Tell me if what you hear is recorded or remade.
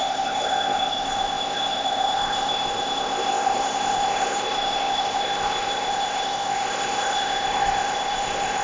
remade